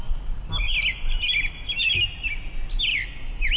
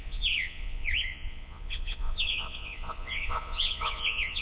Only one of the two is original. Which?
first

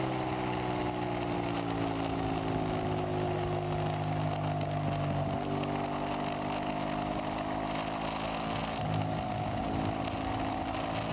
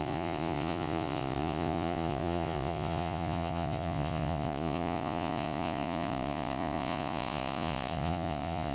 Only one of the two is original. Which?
first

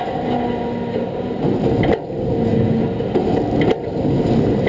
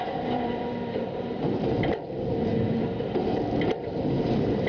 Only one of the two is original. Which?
first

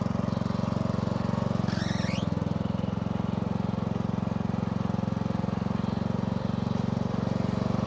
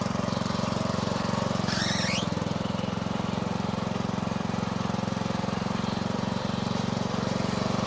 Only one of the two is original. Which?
first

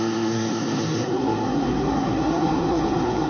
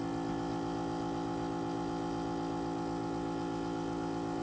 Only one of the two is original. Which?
second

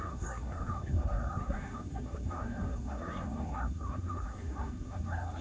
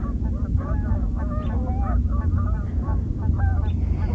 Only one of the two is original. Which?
second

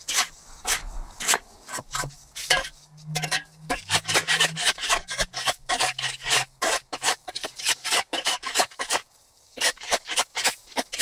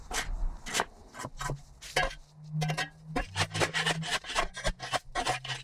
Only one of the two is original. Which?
second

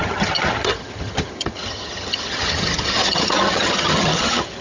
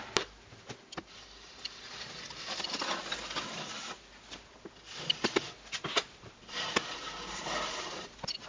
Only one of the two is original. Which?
second